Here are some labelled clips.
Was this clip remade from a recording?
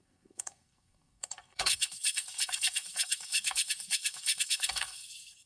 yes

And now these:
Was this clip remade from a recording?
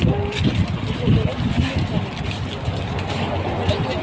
no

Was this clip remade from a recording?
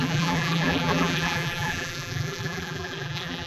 yes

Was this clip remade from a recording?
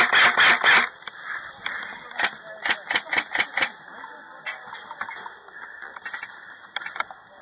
no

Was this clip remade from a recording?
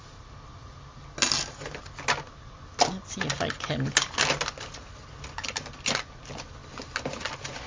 no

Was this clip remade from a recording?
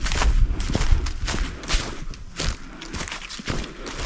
no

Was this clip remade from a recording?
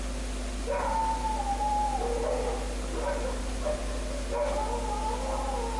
no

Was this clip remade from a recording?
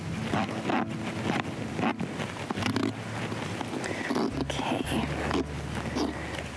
no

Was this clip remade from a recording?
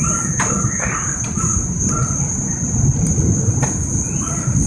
no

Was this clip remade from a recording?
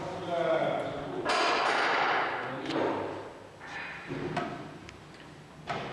no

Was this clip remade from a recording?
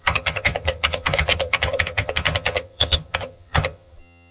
yes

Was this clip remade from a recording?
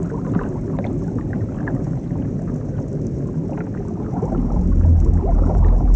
no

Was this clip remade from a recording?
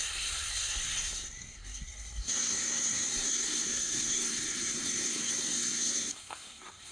yes